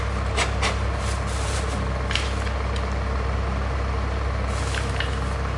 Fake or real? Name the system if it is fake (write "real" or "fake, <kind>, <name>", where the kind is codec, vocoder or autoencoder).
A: real